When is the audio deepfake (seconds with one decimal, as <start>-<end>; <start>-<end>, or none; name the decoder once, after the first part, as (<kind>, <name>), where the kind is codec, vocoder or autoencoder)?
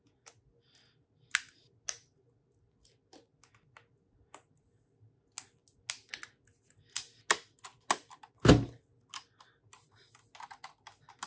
none